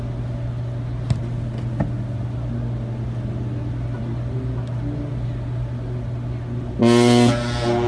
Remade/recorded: recorded